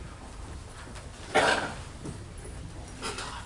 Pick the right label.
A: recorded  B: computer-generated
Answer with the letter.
A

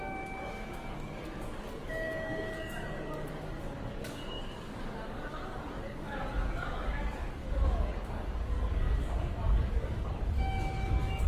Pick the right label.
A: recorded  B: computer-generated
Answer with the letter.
B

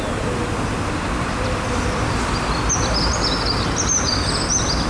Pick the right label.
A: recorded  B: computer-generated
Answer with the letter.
A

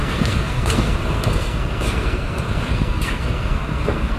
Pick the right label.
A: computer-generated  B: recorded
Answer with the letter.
A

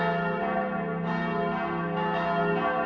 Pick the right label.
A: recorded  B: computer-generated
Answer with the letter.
A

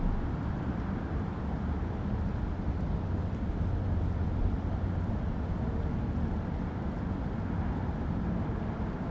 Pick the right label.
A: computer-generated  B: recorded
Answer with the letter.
B